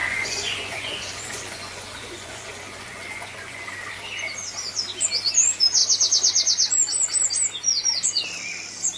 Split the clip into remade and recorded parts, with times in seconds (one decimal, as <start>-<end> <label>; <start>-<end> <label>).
0.0-3.7 remade; 3.7-9.0 recorded